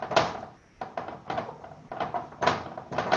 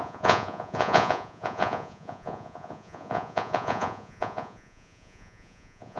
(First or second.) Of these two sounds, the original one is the first